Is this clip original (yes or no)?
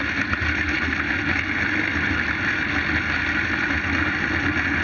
yes